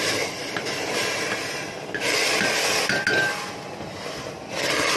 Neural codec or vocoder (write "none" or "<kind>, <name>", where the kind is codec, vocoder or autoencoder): none